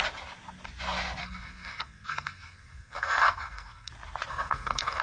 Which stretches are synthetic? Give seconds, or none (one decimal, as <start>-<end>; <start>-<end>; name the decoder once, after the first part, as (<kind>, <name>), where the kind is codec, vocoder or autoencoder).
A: 1.2-3.9 (codec, SNAC); 4.3-5.0